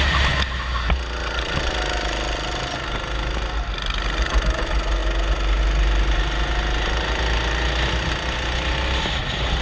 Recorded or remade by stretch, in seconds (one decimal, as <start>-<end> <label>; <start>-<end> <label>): 0.0-9.6 recorded